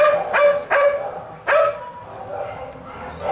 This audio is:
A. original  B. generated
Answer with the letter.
A